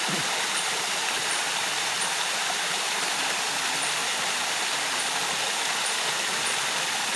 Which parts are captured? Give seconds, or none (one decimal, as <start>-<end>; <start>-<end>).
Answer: 0.0-1.0; 3.4-4.0; 5.0-7.2